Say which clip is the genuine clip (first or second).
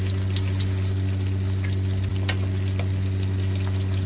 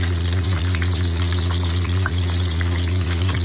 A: first